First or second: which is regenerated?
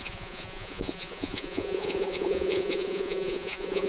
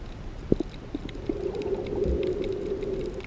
first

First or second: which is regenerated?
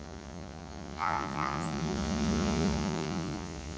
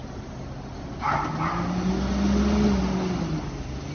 first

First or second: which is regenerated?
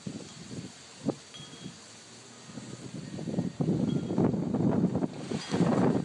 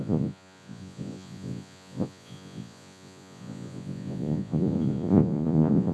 second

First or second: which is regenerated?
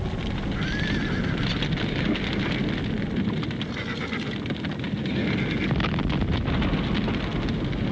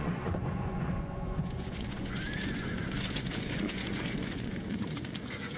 second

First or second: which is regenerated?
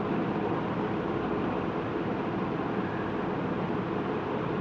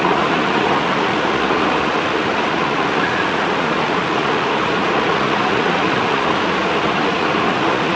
second